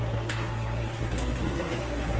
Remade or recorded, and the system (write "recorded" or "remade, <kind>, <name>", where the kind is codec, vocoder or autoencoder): remade, codec, SNAC